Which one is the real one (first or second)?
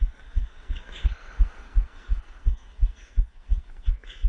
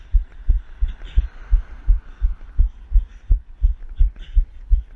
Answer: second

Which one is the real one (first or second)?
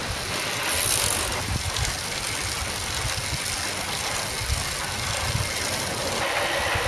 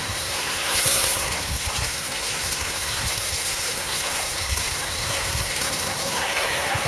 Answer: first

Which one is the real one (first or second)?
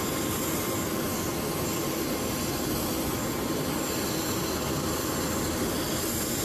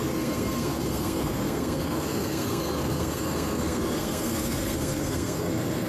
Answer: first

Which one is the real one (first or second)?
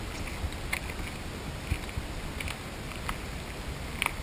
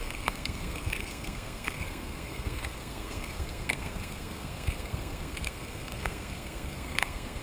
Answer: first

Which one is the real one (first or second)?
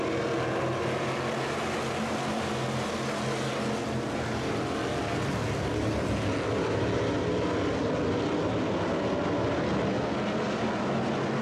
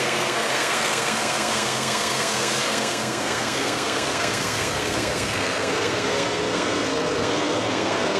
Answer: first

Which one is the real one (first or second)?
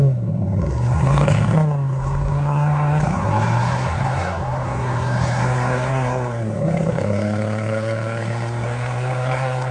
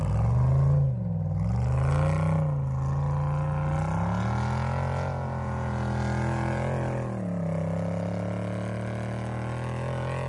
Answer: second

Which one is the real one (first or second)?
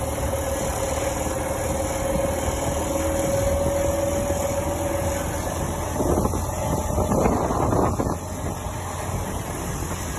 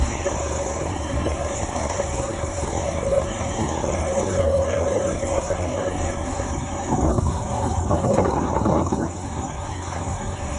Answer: first